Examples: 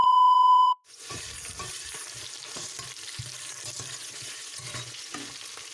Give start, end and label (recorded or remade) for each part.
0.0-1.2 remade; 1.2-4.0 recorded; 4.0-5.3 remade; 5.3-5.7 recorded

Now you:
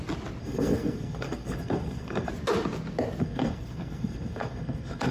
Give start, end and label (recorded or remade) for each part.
0.0-0.4 recorded; 0.4-2.3 remade; 2.3-3.2 recorded; 3.2-5.1 remade

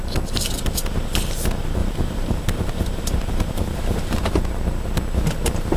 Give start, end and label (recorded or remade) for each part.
0.0-1.8 recorded; 1.8-4.3 remade; 4.3-5.8 recorded

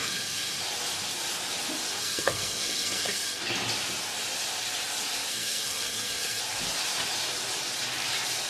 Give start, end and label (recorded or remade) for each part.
0.0-0.6 remade; 0.6-2.0 recorded; 2.0-3.4 remade; 3.4-5.3 recorded; 5.3-6.4 remade; 6.4-8.5 recorded

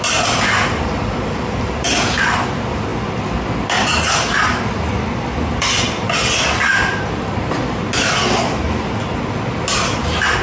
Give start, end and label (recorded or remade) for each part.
0.0-10.4 recorded

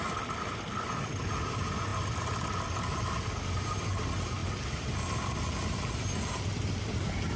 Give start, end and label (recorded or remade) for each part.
0.0-7.4 recorded